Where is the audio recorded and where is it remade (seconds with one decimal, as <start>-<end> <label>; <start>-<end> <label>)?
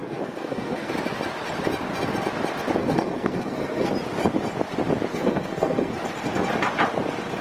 0.0-0.9 remade; 0.9-2.8 recorded; 2.8-3.9 remade; 3.9-5.1 recorded; 5.1-5.9 remade; 5.9-7.4 recorded